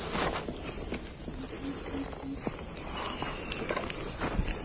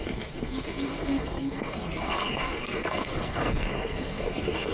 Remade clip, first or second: second